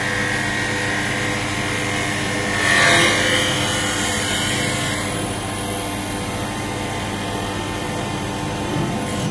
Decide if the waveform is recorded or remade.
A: recorded